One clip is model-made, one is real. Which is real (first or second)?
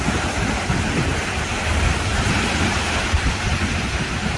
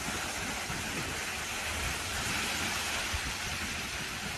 second